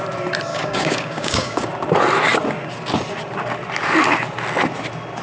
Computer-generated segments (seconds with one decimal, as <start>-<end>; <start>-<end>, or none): 0.5-1.7